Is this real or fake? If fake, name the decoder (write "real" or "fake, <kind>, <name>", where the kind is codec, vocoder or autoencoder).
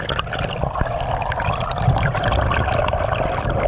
real